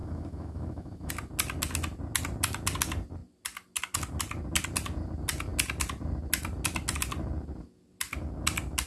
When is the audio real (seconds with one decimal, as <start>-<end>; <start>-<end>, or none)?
1.1-8.9